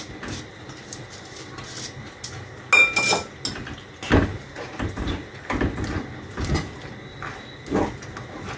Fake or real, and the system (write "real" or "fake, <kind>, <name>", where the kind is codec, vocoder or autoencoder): real